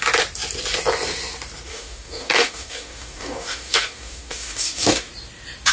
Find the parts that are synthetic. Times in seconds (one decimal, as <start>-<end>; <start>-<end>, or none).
1.7-5.1